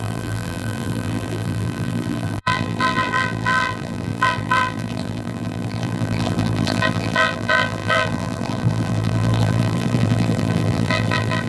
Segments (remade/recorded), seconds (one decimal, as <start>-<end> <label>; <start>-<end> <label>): 0.0-11.5 remade